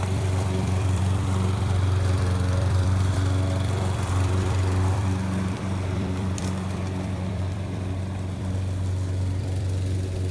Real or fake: fake